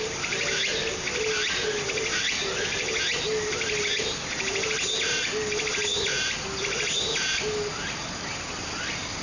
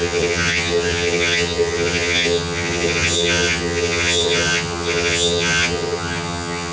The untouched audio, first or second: first